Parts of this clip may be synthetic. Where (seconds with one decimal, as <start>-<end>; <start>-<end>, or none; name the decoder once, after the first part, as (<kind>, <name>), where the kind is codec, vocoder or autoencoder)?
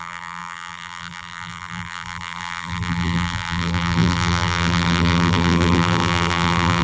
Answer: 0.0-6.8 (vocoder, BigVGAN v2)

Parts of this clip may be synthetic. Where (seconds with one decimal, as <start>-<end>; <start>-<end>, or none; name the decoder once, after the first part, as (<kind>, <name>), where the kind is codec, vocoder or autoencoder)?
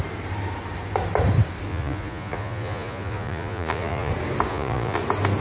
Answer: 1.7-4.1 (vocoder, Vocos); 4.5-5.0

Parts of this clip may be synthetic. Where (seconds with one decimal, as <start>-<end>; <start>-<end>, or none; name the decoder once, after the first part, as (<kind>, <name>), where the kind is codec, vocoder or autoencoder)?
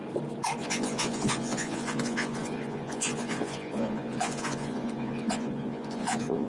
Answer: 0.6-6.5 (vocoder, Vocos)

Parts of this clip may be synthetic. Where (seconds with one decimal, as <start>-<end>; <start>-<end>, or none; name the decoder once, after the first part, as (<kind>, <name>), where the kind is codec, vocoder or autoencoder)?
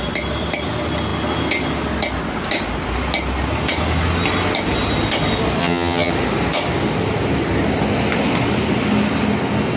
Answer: 5.6-6.1 (vocoder, HiFi-GAN)